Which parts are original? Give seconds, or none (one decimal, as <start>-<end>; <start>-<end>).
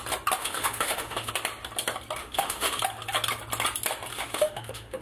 0.0-0.4; 1.3-2.2; 2.8-4.1